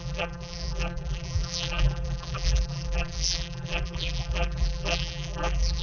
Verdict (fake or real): fake